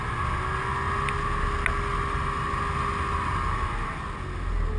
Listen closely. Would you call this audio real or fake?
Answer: real